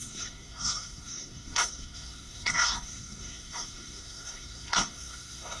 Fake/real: fake